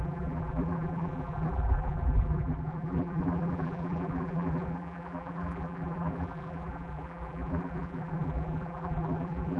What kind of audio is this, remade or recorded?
remade